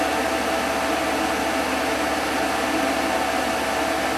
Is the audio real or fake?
real